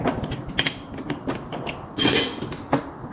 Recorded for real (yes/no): yes